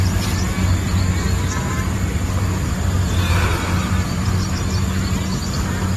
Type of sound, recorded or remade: recorded